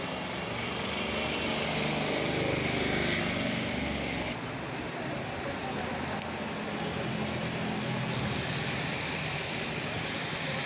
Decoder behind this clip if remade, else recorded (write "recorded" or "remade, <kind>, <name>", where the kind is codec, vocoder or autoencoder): recorded